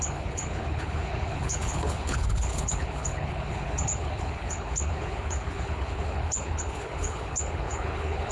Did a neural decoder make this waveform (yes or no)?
yes